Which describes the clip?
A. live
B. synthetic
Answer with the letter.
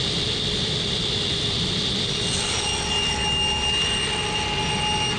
A